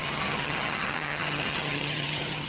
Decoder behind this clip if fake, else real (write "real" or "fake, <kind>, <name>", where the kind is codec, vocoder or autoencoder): fake, vocoder, HiFi-GAN